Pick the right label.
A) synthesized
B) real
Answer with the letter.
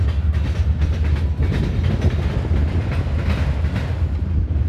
B